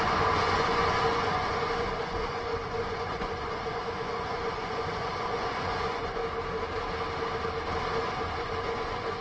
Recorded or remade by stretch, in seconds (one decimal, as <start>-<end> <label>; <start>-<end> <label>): 0.0-6.2 remade; 6.2-8.0 recorded; 8.0-9.2 remade